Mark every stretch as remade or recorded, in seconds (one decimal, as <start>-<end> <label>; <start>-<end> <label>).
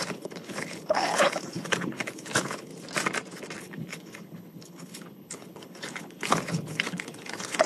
0.0-2.7 remade; 2.7-3.6 recorded; 3.6-7.7 remade